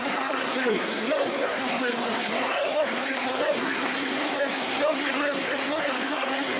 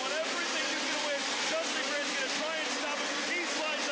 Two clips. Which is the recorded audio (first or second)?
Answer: second